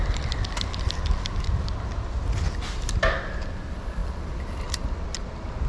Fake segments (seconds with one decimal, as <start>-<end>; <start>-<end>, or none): none